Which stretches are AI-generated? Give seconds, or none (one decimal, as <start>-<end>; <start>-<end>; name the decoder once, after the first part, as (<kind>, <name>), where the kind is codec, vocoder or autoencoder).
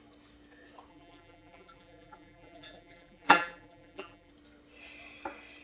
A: 0.9-4.3 (vocoder, BigVGAN v2)